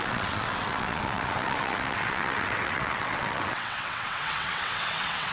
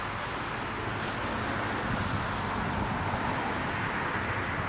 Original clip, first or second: second